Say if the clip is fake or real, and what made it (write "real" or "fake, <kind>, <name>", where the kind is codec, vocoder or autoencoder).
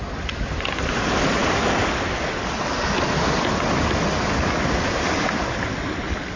real